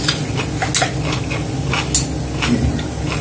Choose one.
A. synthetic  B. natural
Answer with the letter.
B